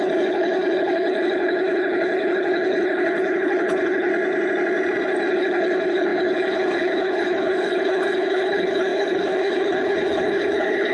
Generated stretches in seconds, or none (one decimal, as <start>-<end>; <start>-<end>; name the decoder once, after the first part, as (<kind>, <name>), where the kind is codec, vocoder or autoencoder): 0.0-4.1 (codec, HILCodec); 5.3-10.9